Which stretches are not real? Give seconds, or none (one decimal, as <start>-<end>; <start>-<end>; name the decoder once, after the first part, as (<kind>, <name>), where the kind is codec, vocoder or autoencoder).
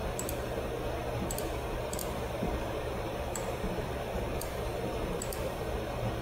2.0-5.7 (vocoder, BigVGAN v2)